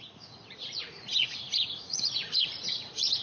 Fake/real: fake